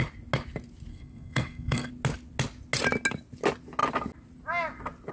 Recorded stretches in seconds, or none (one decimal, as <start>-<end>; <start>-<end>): 0.0-0.9; 1.9-5.1